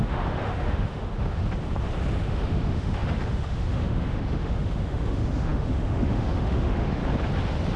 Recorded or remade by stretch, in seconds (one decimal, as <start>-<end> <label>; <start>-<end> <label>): 0.0-1.4 remade; 1.4-2.2 recorded; 2.2-7.0 remade; 7.0-7.8 recorded